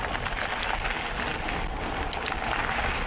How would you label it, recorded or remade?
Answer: recorded